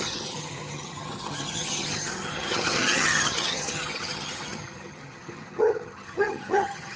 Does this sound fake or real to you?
fake